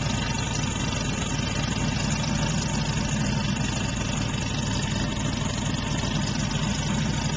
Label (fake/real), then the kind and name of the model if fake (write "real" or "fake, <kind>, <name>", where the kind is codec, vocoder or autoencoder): real